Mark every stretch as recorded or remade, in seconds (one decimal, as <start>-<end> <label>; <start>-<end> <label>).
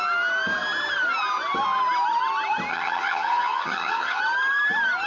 0.0-2.7 recorded; 2.7-4.2 remade; 4.2-5.1 recorded